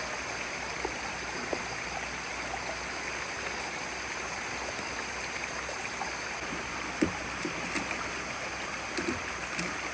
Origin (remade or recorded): recorded